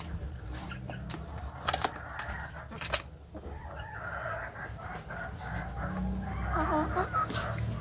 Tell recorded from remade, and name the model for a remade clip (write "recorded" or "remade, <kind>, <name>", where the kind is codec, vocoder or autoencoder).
recorded